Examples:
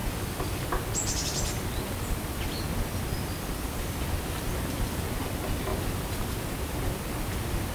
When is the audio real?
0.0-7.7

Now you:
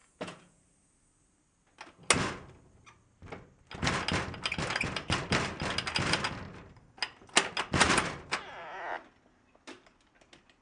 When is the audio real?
0.6-10.6

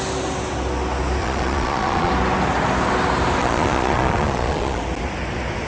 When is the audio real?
0.0-1.2; 2.1-3.4; 4.8-5.7